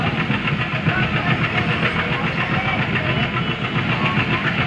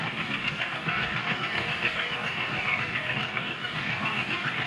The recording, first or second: first